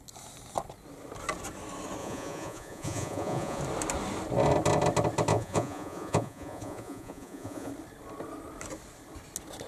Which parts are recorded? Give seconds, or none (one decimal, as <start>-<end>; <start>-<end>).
0.0-2.0; 3.6-5.3; 7.7-9.7